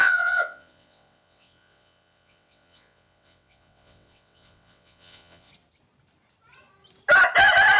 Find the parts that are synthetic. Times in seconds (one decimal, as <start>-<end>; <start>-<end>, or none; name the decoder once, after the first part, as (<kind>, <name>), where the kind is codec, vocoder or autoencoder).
0.0-5.5 (vocoder, WaveNeXt)

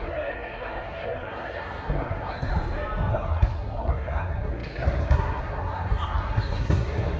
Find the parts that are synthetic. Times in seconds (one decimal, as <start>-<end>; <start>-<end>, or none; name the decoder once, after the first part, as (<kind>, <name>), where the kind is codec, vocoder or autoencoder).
0.0-2.5 (codec, SNAC); 3.1-7.2

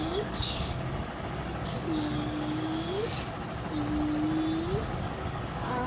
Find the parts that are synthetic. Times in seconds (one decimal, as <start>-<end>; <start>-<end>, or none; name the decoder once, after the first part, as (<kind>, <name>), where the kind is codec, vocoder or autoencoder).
0.0-3.0 (codec, DAC); 5.0-5.9

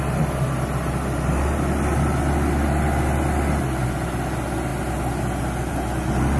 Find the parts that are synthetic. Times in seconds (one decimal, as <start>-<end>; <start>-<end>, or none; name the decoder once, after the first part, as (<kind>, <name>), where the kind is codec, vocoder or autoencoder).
none

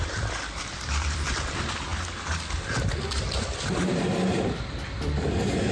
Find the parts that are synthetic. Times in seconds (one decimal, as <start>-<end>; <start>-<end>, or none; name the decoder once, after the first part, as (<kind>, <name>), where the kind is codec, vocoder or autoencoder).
0.0-1.9 (vocoder, BigVGAN v2); 3.0-5.7

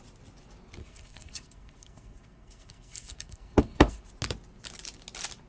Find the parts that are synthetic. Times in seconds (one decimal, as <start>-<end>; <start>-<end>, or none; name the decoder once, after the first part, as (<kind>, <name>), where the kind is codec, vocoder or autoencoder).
0.8-4.1 (codec, SNAC)

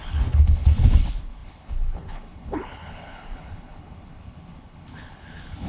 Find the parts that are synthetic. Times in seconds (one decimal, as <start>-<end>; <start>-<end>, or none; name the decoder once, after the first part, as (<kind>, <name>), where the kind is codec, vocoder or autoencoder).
0.0-5.7 (codec, HILCodec)

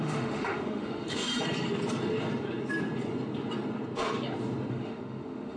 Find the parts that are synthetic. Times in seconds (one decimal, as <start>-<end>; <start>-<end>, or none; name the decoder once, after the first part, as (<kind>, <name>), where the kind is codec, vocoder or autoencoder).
0.0-1.3 (autoencoder, DAC-VAE); 4.7-5.6